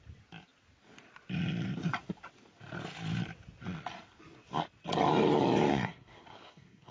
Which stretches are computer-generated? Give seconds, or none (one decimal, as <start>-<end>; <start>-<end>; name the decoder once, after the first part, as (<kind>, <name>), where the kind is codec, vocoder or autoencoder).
5.7-6.9 (codec, SNAC)